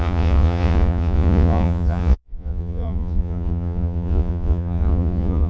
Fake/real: fake